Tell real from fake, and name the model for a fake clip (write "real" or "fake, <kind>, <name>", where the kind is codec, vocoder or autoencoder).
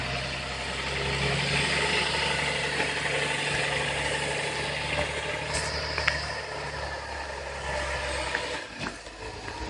real